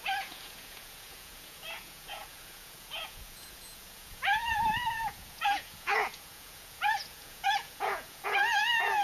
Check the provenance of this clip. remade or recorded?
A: remade